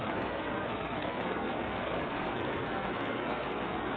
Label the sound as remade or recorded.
remade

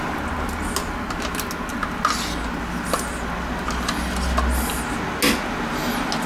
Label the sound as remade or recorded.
recorded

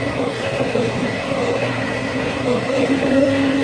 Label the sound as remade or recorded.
remade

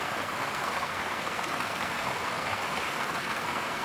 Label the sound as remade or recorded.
remade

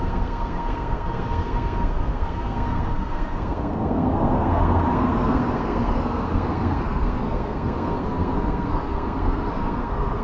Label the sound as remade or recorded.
remade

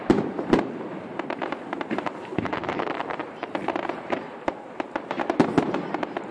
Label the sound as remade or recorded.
remade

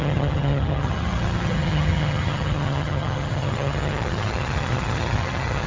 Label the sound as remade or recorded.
remade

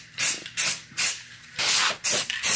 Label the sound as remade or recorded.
recorded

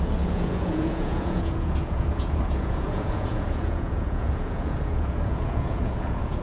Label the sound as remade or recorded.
remade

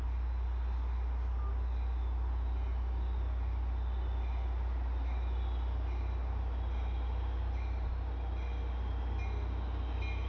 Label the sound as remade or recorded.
recorded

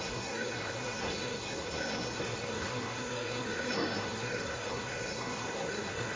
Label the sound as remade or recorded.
remade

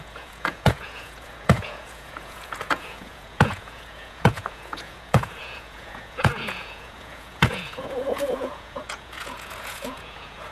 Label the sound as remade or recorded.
remade